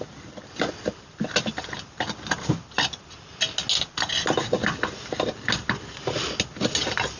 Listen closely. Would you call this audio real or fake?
real